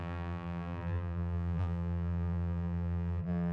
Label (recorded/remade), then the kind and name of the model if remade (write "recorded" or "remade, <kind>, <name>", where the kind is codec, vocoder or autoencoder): remade, vocoder, BigVGAN v2